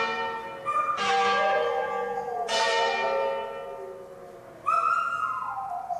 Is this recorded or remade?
recorded